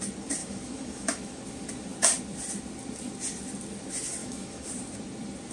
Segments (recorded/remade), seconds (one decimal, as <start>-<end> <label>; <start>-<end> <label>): 0.0-0.4 recorded; 0.4-1.4 remade; 1.4-4.2 recorded; 4.2-4.7 remade; 4.7-5.5 recorded